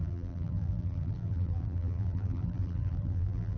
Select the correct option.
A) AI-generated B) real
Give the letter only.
A